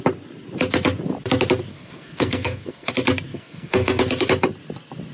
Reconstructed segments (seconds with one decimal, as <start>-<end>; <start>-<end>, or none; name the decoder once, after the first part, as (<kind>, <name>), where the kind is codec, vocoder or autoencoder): 1.7-2.9 (codec, SNAC); 3.3-4.0